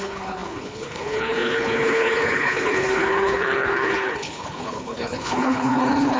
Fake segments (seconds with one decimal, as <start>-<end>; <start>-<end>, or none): 0.0-6.2